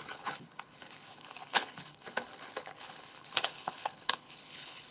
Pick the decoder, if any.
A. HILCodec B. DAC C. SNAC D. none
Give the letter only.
A